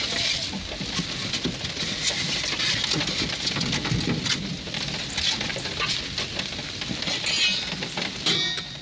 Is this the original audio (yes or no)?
yes